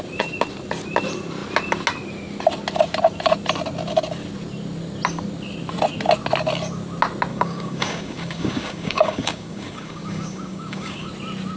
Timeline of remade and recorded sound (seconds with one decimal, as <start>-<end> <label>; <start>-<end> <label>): 0.0-7.3 recorded; 7.3-11.1 remade; 11.1-11.6 recorded